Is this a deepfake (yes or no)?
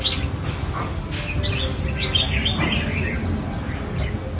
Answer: no